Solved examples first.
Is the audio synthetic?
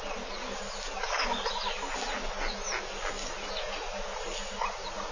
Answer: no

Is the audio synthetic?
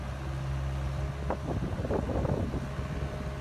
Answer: no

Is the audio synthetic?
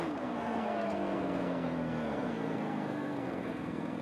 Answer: yes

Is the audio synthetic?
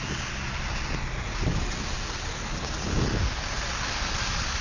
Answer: no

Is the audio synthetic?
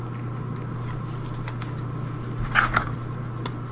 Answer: no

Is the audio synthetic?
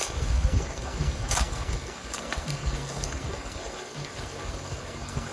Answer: yes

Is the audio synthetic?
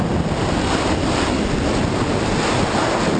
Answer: no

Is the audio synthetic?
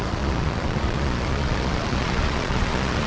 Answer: yes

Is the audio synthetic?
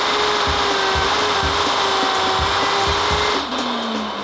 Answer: no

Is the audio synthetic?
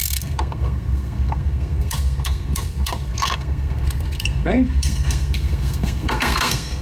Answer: yes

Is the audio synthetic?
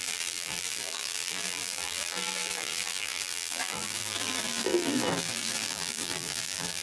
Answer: yes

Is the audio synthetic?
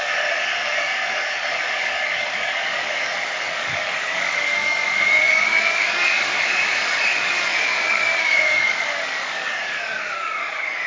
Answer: yes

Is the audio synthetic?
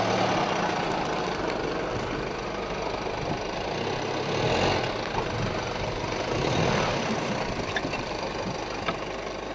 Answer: no